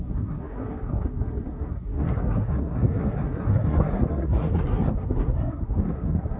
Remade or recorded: remade